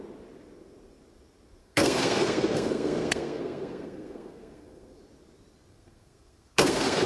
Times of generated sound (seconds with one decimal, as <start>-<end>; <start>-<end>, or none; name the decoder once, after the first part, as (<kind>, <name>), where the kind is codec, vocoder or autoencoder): 1.6-5.0 (codec, SNAC); 5.7-7.1